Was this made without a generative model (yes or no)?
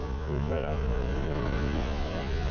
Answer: no